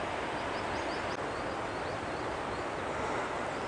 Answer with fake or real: real